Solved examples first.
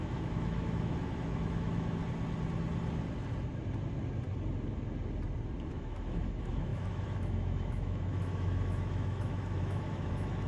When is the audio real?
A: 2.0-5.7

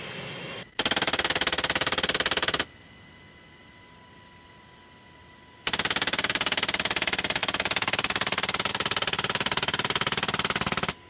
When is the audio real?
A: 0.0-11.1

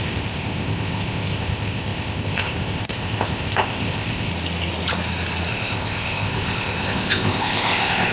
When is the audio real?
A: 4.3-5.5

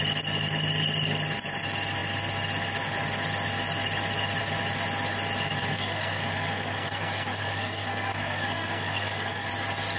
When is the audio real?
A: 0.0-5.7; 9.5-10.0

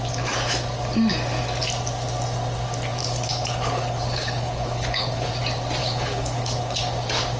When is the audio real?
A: 0.0-3.0; 5.3-5.8; 6.8-7.4